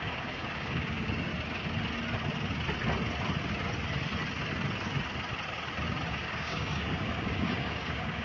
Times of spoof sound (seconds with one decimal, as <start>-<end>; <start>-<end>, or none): 0.0-1.3; 6.1-8.2